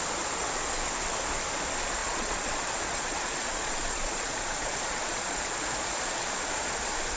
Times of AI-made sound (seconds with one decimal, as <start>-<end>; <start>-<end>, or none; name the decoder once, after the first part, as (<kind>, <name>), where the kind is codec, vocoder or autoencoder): 2.0-6.3 (vocoder, Vocos)